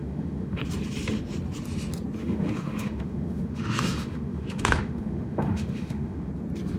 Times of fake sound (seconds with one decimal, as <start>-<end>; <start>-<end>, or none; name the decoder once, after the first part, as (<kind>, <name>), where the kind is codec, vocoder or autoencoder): 0.0-0.6 (autoencoder, DAC-VAE); 2.2-6.3